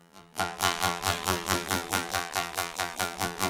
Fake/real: fake